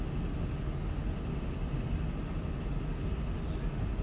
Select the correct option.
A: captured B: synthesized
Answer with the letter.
A